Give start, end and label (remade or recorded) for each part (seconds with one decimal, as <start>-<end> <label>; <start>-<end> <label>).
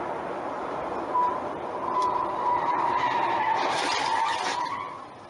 0.0-5.3 recorded